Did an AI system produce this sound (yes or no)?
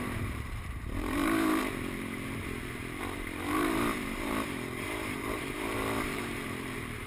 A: yes